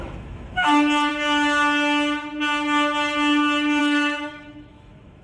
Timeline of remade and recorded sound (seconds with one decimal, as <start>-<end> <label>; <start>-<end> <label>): 0.0-1.1 remade; 1.1-3.8 recorded; 3.8-5.2 remade